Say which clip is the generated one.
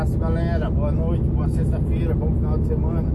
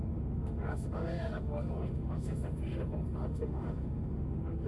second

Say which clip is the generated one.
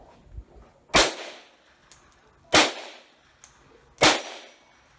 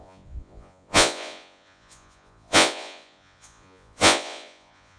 second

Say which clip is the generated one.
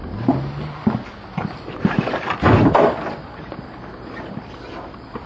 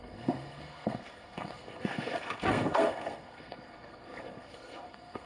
second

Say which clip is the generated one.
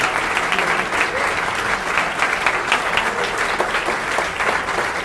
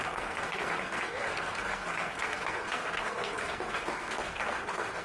second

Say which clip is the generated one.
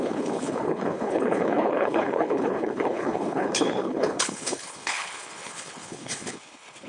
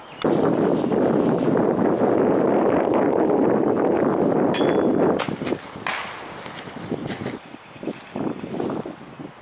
first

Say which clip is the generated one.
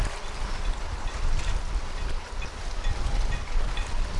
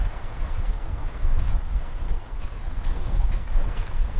second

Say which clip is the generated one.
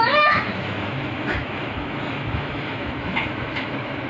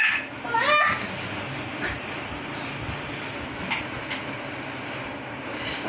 first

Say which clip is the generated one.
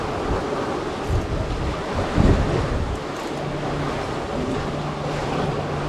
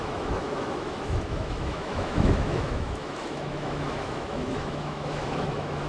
second